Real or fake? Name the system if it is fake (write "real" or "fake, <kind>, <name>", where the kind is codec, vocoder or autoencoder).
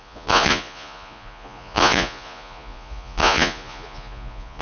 fake, vocoder, Vocos